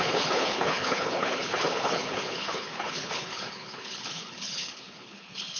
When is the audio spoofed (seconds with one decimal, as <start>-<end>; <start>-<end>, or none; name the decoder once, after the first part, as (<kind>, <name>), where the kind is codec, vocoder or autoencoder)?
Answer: 0.0-5.6 (codec, HILCodec)